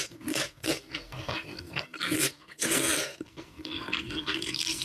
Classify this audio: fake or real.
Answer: fake